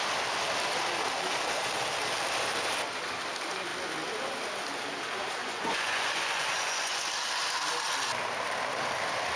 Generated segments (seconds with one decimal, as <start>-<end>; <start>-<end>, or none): 5.4-7.1